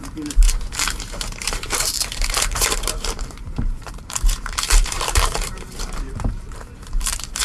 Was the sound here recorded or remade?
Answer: remade